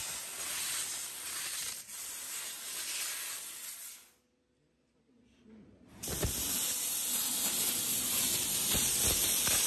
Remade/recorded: recorded